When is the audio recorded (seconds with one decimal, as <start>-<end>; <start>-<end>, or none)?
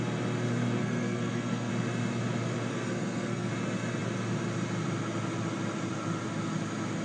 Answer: 0.0-0.8; 1.7-2.7; 3.5-7.0